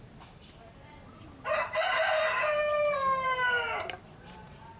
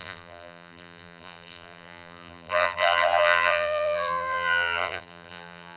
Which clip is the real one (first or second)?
first